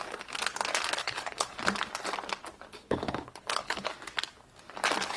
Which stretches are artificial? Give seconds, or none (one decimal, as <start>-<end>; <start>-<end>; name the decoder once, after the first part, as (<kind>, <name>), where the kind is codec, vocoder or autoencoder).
1.0-1.6 (codec, HILCodec); 2.7-3.9